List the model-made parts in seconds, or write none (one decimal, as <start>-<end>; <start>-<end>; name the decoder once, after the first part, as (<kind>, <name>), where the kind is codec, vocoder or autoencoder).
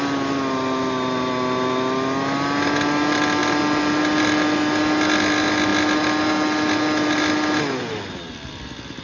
none